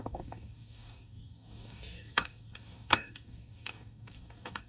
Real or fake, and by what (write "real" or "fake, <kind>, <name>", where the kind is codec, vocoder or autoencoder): fake, codec, DAC